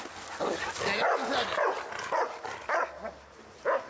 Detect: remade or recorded recorded